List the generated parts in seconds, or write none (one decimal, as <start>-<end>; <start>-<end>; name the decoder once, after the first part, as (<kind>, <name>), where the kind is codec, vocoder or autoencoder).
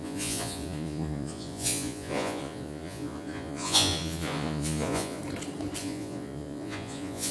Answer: 0.0-5.2 (vocoder, Vocos); 5.8-7.3